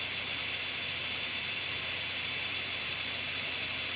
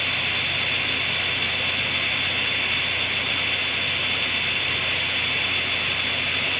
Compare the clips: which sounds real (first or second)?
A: second